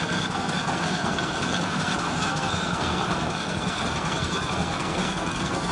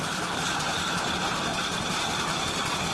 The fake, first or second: first